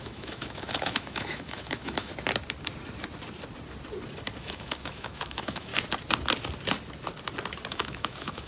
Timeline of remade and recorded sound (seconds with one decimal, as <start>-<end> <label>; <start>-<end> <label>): 0.0-2.1 remade; 2.1-4.4 recorded; 4.4-5.7 remade; 5.7-7.7 recorded; 7.7-8.5 remade